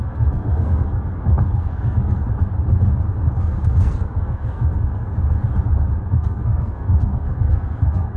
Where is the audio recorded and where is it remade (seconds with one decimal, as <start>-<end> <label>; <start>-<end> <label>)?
0.0-2.2 remade; 2.2-3.4 recorded; 3.4-5.1 remade; 5.1-6.1 recorded; 6.1-8.2 remade